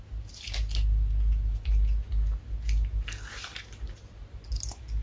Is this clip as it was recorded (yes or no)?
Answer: yes